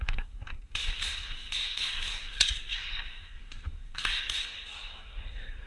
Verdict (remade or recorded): remade